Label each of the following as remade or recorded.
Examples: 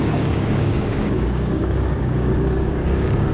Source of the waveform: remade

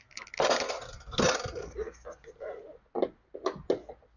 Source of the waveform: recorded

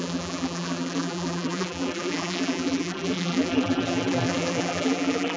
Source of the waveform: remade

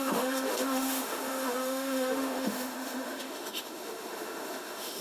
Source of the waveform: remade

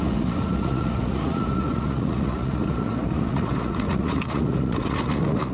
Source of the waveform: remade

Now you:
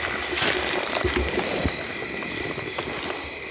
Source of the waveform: recorded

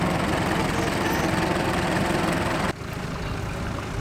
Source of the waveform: recorded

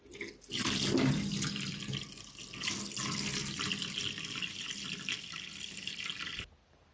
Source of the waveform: recorded